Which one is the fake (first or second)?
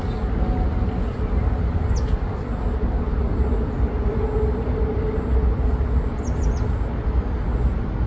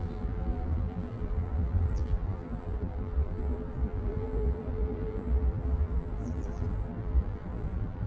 second